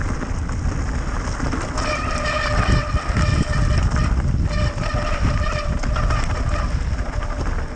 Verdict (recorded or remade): recorded